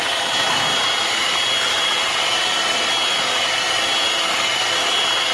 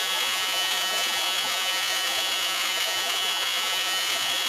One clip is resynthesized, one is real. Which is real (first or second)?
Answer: first